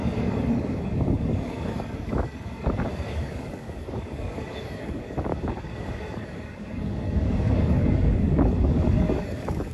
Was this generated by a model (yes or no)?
yes